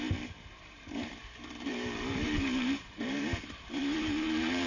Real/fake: fake